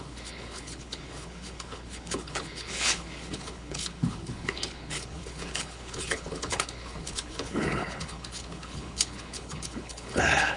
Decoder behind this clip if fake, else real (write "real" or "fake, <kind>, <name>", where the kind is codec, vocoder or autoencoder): fake, codec, HILCodec